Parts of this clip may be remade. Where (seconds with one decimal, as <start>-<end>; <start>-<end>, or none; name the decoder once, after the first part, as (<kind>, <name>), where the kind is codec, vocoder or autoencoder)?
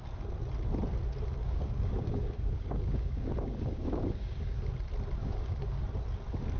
1.4-4.7 (codec, DAC); 5.2-5.8